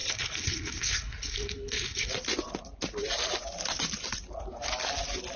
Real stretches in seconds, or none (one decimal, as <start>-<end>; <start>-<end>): 2.1-5.4